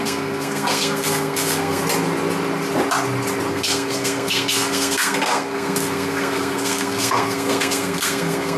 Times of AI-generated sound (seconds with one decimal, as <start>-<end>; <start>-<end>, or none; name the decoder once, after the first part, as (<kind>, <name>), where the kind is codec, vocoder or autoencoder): 0.0-1.8 (codec, SNAC); 3.5-8.6